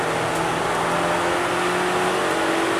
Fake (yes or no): no